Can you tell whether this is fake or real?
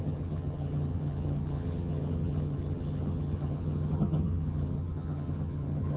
fake